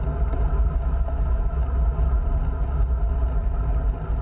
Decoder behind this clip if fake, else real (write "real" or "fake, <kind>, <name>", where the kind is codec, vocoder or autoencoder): real